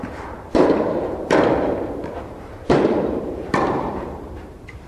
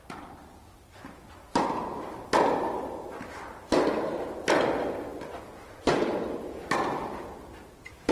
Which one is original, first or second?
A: second